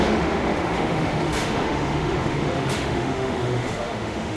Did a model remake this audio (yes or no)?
yes